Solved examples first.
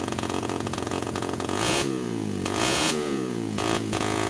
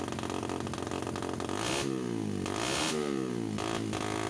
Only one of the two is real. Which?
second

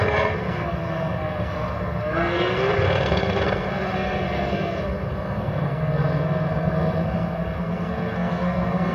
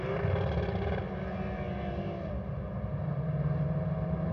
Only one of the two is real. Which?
second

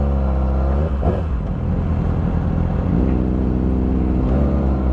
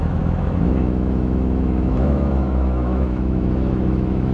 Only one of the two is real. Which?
first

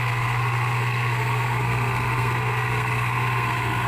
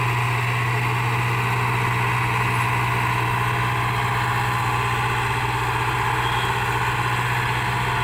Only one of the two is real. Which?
second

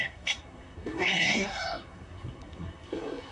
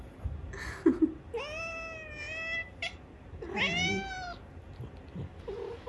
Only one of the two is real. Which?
second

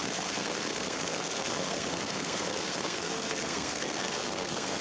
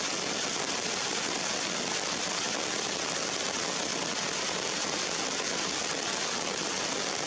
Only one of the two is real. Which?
second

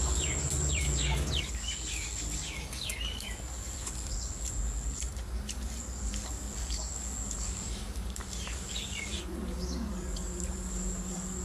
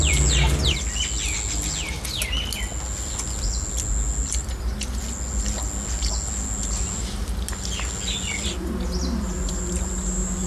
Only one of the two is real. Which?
second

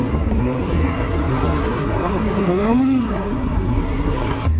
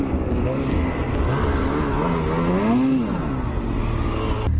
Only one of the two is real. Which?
second